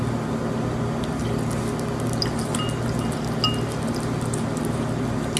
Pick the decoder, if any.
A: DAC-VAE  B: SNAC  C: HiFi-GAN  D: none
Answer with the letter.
D